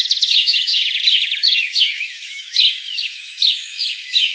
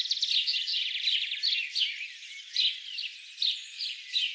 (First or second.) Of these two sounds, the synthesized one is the first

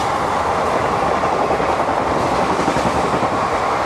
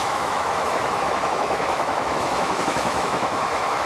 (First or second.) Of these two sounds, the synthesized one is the second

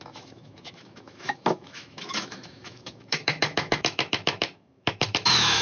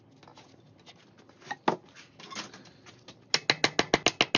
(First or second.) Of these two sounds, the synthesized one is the first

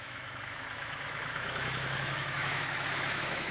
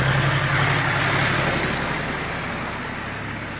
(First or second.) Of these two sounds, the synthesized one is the first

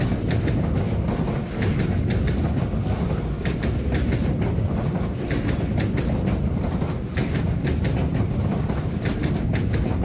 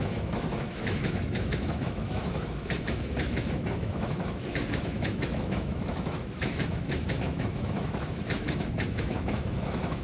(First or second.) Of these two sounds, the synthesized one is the second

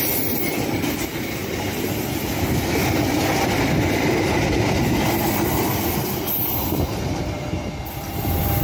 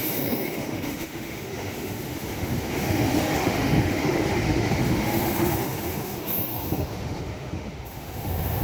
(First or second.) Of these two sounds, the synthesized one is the second